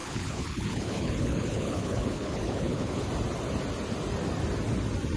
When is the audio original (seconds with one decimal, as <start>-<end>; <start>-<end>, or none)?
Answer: 3.1-5.2